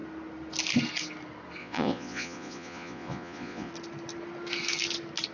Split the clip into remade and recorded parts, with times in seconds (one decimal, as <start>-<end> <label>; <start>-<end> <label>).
0.0-1.6 recorded; 1.6-3.7 remade; 3.7-5.3 recorded